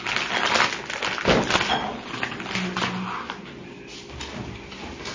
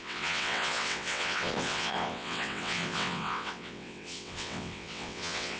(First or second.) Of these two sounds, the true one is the first